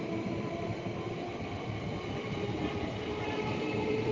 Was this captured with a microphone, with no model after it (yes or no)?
no